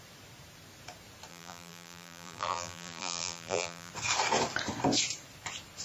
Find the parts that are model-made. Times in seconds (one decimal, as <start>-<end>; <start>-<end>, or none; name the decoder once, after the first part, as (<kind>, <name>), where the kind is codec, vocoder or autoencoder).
1.3-3.9 (vocoder, BigVGAN v2)

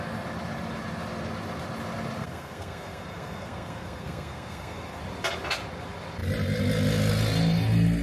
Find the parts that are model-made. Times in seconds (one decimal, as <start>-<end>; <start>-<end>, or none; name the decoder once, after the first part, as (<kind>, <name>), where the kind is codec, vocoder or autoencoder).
2.2-5.0 (codec, SNAC)

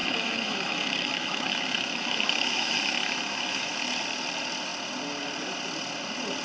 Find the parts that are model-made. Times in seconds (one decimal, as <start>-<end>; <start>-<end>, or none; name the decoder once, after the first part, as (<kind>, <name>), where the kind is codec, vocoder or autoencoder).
0.0-3.8 (autoencoder, DAC-VAE)